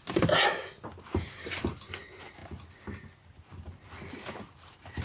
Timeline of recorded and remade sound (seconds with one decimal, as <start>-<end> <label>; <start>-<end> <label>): 0.0-5.0 recorded